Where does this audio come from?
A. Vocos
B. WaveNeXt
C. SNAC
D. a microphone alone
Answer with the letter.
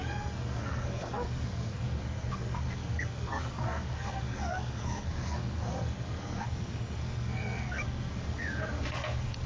C